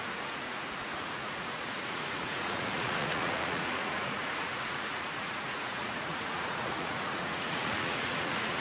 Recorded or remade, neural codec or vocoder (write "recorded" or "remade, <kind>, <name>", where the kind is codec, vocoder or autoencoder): remade, vocoder, Vocos